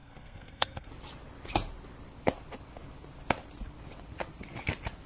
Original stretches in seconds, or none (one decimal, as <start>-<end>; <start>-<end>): 0.9-5.1